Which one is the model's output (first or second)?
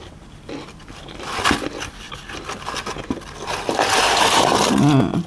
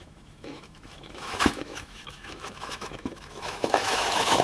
second